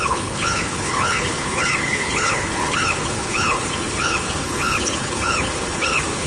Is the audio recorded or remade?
remade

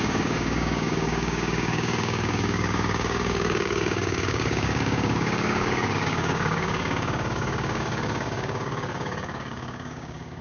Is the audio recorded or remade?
remade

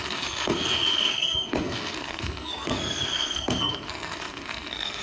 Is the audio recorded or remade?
remade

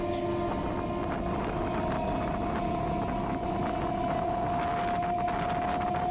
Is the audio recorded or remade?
recorded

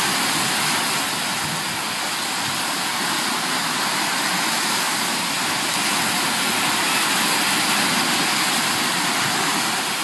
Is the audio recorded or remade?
recorded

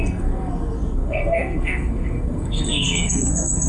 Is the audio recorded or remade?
remade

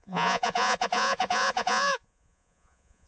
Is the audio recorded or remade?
remade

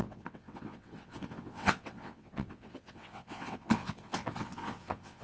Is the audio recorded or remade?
remade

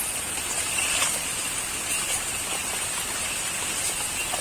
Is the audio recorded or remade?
recorded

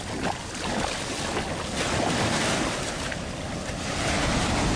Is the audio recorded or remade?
recorded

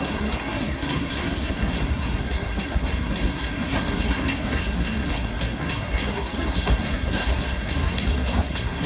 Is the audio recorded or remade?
remade